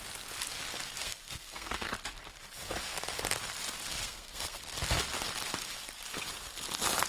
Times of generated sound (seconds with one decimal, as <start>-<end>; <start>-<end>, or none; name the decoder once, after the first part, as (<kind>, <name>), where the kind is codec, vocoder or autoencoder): 1.0-1.9 (codec, SNAC); 3.9-4.6

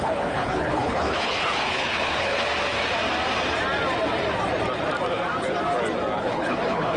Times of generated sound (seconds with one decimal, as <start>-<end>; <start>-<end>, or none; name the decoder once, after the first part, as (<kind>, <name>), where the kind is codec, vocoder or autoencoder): 0.0-2.5 (codec, HILCodec); 6.2-7.0

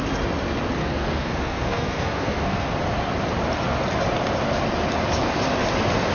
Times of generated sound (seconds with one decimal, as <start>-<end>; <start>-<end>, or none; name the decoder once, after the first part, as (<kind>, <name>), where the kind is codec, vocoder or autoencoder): 0.8-2.7 (codec, SNAC)